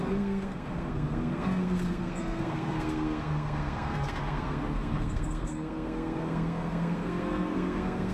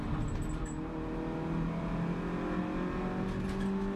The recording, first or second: second